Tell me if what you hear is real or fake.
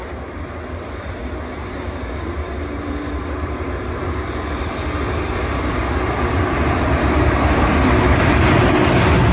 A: real